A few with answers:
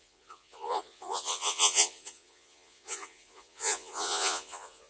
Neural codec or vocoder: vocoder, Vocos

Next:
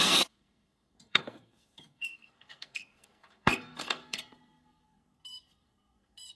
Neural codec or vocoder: codec, SNAC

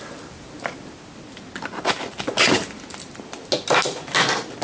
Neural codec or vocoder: none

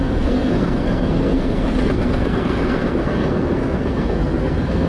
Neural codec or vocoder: codec, SNAC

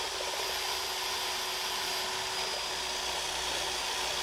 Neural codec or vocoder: none